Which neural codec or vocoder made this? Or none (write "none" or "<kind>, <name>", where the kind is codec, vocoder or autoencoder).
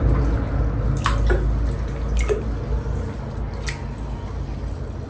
none